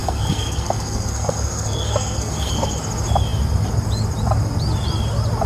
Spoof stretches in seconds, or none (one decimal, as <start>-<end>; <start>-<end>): 0.0-2.8